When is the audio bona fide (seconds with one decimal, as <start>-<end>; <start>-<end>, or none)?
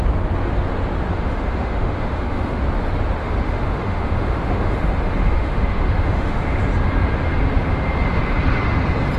0.0-1.1; 2.6-3.2; 6.6-9.2